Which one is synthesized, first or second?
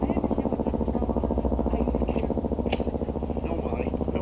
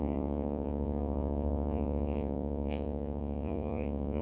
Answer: second